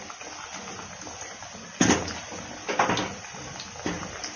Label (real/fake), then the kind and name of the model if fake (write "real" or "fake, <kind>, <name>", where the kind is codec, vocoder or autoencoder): real